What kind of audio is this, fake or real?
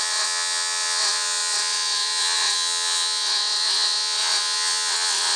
fake